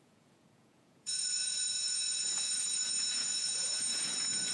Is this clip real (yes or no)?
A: no